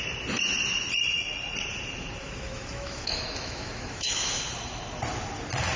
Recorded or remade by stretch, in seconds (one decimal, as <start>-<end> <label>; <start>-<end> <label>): 0.0-2.2 recorded; 2.2-4.4 remade; 4.4-5.8 recorded